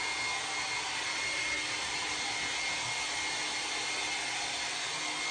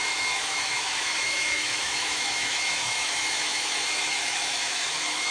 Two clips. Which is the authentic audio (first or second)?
first